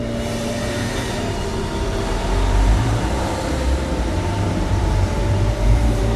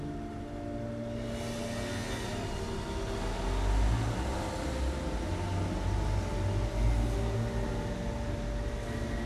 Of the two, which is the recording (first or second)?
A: second